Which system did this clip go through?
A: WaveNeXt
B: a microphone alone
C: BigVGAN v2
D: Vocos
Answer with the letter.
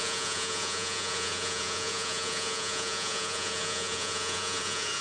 D